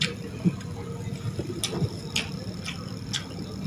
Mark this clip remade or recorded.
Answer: recorded